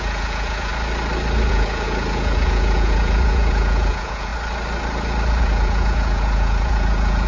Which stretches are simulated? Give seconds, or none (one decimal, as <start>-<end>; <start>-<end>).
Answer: 0.0-0.7; 1.5-4.3; 5.4-7.3